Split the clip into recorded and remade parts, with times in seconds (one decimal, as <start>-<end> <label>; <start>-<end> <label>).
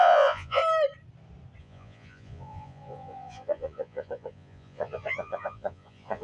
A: 0.0-0.6 remade; 0.6-1.6 recorded; 1.6-6.2 remade